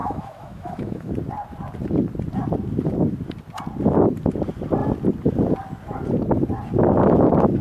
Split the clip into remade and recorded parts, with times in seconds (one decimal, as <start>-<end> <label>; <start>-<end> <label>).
0.0-1.1 remade; 1.1-7.6 recorded